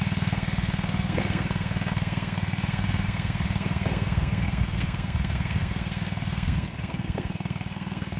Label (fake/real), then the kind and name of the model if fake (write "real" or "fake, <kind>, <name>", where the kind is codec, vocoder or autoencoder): fake, codec, SNAC